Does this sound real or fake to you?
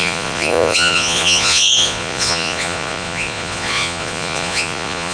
fake